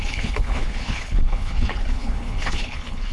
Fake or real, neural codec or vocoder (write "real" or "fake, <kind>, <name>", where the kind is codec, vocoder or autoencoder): fake, codec, HILCodec